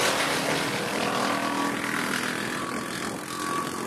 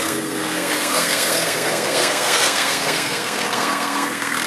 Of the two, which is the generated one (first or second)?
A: second